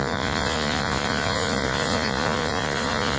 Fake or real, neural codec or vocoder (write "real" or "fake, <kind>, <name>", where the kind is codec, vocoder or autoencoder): fake, vocoder, Vocos